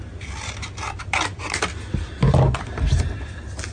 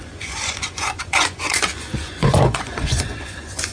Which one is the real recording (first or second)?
first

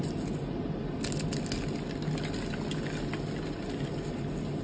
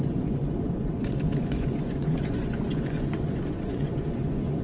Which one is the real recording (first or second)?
first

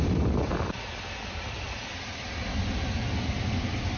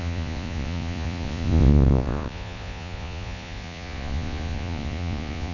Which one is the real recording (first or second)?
first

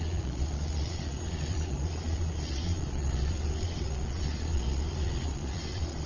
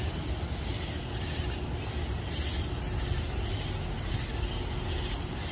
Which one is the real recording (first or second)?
second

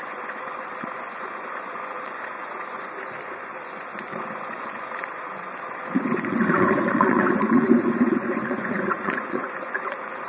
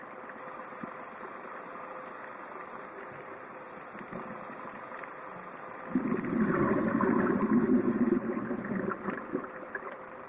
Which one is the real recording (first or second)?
second